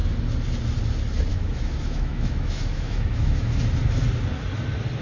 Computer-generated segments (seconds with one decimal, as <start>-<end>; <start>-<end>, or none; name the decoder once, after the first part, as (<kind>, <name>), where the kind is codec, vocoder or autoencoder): 1.3-3.5 (autoencoder, DAC-VAE)